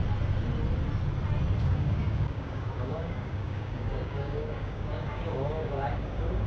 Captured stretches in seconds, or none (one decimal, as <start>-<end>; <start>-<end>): 0.0-1.6